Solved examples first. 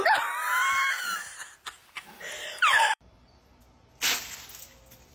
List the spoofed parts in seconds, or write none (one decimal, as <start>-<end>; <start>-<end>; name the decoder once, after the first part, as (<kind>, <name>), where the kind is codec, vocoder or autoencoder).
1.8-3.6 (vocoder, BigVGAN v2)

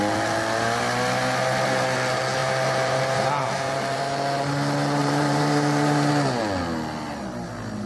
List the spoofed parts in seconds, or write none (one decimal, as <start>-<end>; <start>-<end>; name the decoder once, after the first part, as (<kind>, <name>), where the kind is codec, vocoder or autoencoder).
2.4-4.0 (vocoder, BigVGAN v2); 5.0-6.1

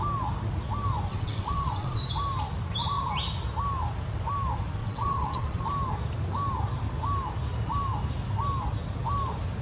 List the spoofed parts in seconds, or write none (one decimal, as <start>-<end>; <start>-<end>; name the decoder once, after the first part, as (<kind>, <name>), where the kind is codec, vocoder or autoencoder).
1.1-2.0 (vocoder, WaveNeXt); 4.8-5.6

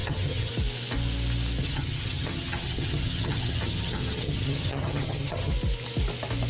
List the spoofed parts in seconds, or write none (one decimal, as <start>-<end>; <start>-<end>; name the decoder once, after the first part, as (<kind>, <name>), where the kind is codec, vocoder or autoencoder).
0.0-0.5 (vocoder, HiFi-GAN); 1.6-5.5

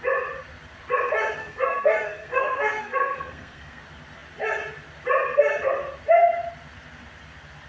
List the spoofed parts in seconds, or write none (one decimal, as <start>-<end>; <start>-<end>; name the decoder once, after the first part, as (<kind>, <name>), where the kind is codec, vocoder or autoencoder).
1.4-3.8 (codec, SNAC)

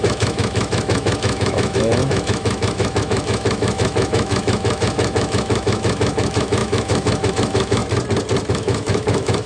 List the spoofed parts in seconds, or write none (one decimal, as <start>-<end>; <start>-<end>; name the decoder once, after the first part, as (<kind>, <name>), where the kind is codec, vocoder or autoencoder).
0.0-7.8 (autoencoder, DAC-VAE); 8.5-9.5

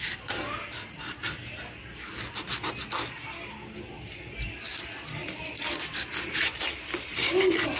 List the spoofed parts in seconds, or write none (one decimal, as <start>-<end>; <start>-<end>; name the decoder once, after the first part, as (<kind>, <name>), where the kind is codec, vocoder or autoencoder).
none